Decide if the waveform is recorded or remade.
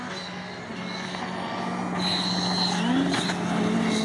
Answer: recorded